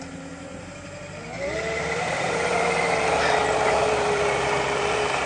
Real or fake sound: fake